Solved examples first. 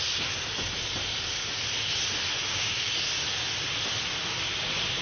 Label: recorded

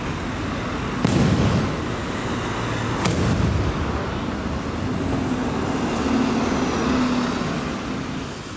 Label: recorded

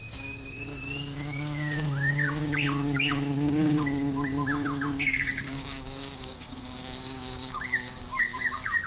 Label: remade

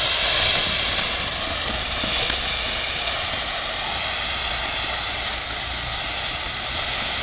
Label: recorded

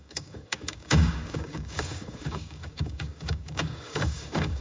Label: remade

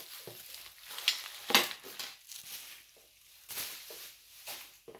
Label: recorded